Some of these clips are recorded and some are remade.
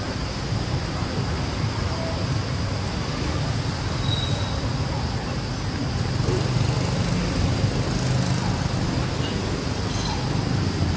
recorded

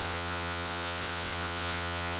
remade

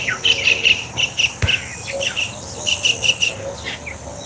recorded